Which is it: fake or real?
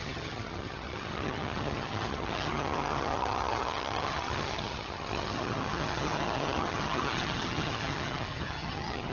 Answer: fake